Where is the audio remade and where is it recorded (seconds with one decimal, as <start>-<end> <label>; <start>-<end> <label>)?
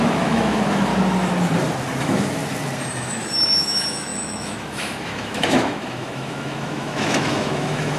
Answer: 0.0-0.9 remade; 0.9-2.0 recorded; 2.0-2.4 remade; 2.4-2.9 recorded; 2.9-8.0 remade